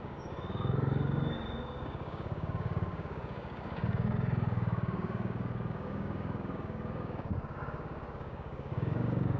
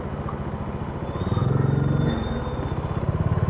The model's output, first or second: first